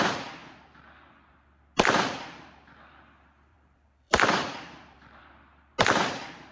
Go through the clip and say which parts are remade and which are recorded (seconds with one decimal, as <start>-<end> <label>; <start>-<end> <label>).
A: 0.0-3.5 recorded; 3.5-5.2 remade; 5.2-6.5 recorded